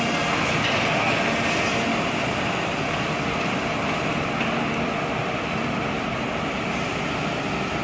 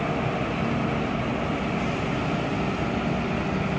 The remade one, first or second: first